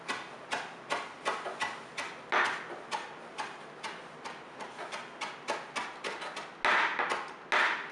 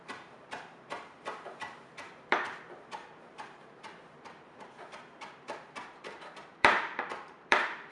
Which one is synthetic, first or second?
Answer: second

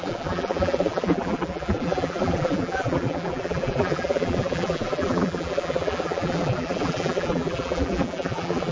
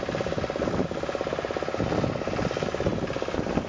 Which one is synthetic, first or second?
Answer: first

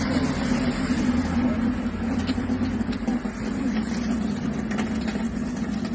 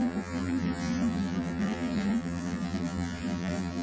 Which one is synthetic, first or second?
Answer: second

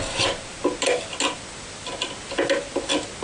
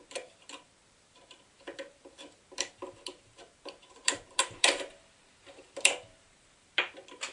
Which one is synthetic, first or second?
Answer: second